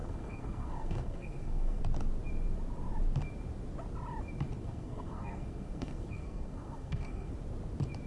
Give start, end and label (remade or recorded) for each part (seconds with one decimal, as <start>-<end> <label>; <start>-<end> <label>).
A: 0.0-1.8 remade; 1.8-4.6 recorded; 4.6-7.3 remade; 7.3-8.1 recorded